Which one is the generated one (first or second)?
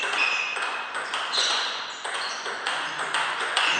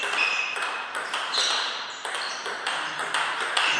first